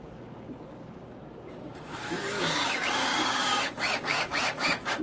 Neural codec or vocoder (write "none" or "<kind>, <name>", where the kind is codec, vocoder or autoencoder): codec, DAC